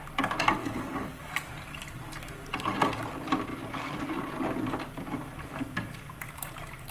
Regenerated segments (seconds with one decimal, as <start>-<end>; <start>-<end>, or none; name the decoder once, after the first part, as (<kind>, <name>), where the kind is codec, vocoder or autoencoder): 0.6-1.3 (codec, DAC)